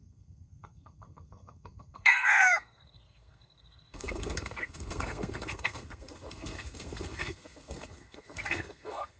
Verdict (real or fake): fake